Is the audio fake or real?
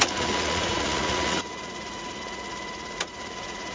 fake